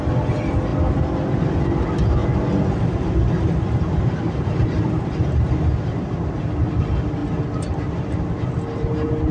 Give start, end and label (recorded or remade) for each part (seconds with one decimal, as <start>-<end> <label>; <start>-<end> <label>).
0.0-9.3 recorded